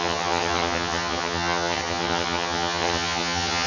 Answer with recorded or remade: remade